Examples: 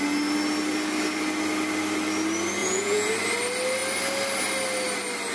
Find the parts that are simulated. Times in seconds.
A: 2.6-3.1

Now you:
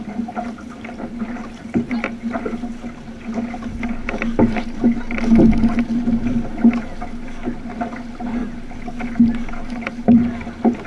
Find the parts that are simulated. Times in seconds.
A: none

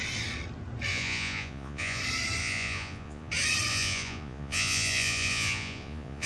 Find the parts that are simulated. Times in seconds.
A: 0.9-2.0; 2.4-3.3; 3.7-6.3

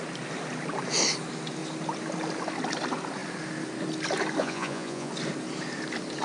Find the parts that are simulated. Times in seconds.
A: 4.4-5.1

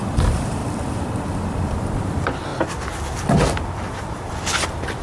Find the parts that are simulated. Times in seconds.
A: 0.0-0.6; 2.0-2.5; 4.0-5.0

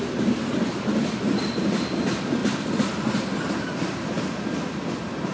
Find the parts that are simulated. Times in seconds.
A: 2.4-3.5; 3.9-5.3

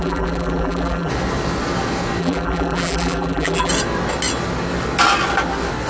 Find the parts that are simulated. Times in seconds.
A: 0.0-1.1; 2.2-3.7

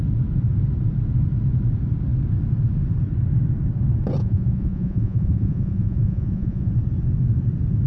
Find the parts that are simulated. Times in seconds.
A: 4.2-6.7